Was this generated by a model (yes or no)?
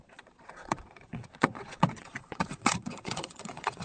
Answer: yes